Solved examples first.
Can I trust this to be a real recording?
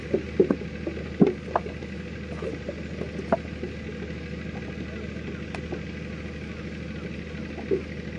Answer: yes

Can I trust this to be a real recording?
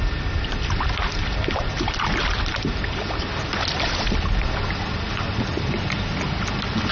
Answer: yes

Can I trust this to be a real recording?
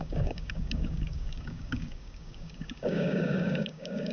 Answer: no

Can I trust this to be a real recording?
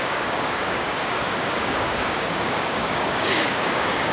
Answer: no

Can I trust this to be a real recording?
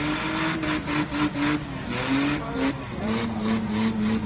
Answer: yes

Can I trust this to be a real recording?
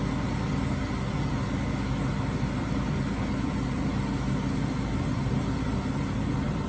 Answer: yes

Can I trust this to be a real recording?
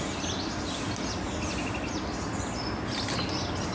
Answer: yes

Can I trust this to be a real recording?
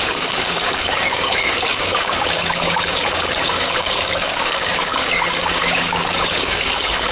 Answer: no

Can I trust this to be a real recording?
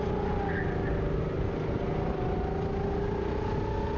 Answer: yes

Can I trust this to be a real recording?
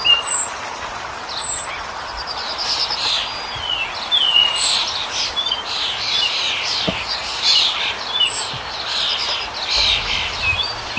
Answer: yes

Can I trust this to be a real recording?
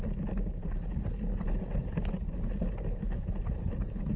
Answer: yes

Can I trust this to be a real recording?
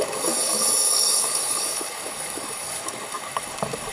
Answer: no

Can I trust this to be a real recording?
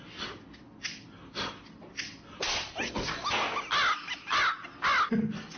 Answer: yes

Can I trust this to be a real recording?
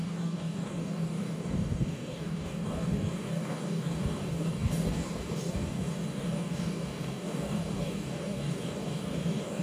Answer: no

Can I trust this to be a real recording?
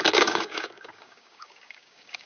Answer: no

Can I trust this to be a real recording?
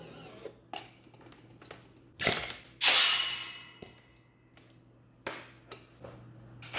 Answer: yes